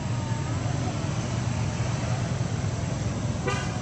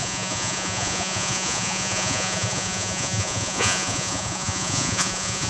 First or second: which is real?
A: first